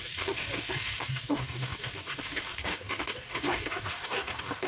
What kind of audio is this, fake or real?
fake